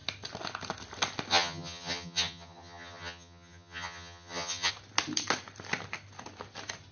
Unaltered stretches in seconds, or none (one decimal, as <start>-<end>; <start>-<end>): 0.0-1.3; 4.7-6.9